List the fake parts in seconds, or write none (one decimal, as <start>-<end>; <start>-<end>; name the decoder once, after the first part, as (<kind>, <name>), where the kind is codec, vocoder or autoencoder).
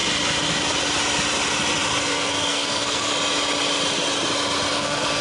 2.0-3.1 (codec, SNAC); 4.7-5.2